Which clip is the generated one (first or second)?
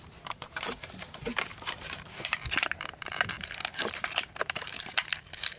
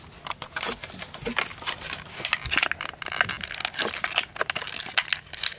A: first